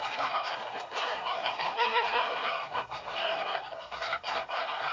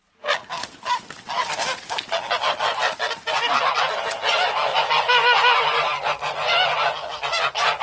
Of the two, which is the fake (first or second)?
first